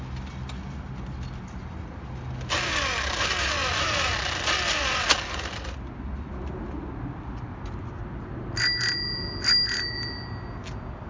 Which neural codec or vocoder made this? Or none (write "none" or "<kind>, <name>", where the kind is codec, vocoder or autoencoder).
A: none